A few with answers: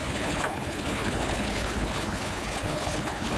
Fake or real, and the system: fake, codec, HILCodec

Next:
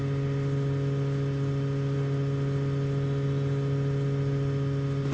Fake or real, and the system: real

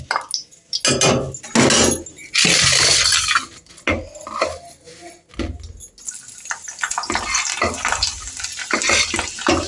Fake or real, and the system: real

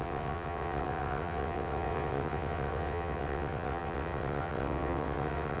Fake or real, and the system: fake, vocoder, WaveNeXt